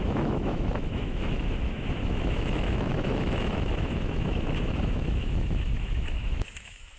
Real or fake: fake